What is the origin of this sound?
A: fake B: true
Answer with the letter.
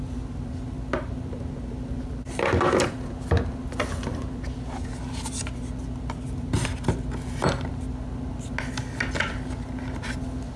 B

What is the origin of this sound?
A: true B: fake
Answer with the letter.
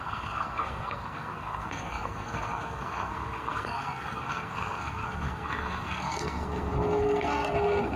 B